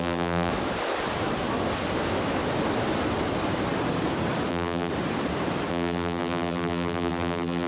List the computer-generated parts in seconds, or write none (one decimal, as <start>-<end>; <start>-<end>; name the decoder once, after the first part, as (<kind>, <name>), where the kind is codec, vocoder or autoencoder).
0.0-0.5 (vocoder, BigVGAN v2); 4.5-4.9; 5.7-7.7